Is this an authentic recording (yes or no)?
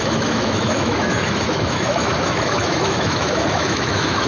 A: no